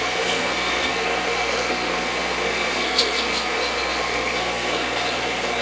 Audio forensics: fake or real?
fake